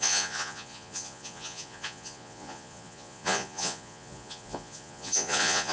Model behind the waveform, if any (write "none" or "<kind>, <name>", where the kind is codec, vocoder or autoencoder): vocoder, Vocos